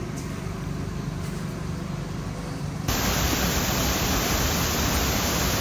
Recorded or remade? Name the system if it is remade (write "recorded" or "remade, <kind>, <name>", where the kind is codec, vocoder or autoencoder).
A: remade, vocoder, BigVGAN v2